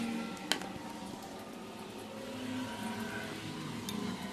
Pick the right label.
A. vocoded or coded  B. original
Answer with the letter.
B